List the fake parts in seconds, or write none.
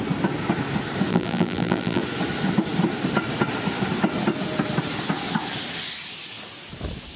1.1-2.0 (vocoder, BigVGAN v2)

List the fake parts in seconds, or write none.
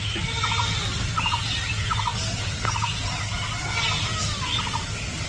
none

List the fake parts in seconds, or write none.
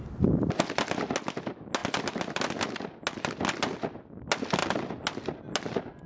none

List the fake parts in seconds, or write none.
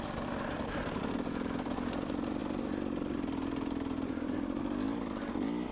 none